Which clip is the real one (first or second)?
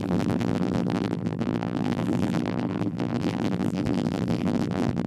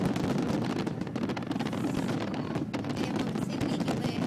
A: second